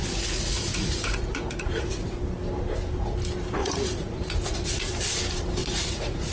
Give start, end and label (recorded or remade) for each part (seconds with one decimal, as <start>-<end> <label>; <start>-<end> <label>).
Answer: 0.0-2.2 remade; 2.2-3.6 recorded; 3.6-4.9 remade; 4.9-5.6 recorded; 5.6-6.3 remade